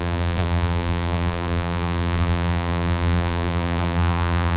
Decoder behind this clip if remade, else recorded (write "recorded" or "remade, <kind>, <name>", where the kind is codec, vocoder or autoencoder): remade, vocoder, BigVGAN v2